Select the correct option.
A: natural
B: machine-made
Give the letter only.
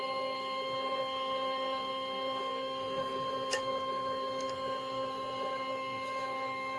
B